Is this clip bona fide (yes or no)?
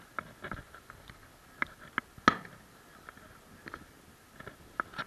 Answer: yes